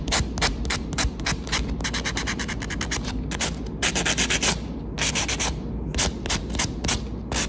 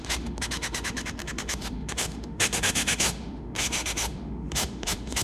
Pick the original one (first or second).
first